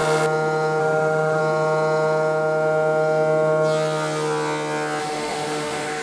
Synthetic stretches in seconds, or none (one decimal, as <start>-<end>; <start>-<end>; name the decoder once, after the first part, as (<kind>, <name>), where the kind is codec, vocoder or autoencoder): 0.8-1.4 (autoencoder, DAC-VAE); 5.0-6.0